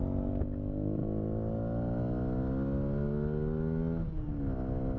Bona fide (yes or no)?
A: yes